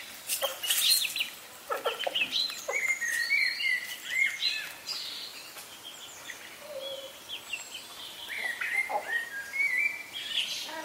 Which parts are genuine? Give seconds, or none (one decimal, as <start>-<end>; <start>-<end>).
0.0-7.9; 8.7-10.8